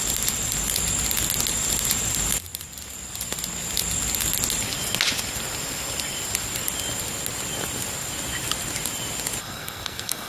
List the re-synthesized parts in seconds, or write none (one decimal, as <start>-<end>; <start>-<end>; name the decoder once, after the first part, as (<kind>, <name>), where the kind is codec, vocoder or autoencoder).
9.4-10.3 (codec, SNAC)